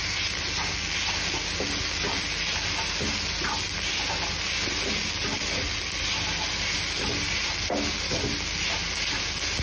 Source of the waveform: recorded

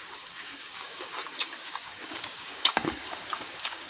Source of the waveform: remade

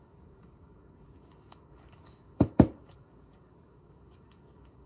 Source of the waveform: remade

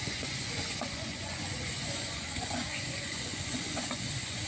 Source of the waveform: remade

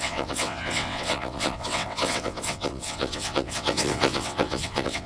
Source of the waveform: remade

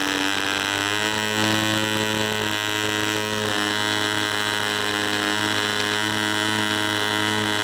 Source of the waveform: recorded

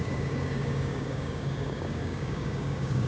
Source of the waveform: remade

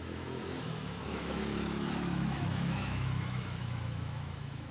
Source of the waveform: remade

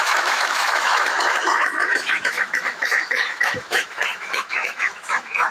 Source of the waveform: remade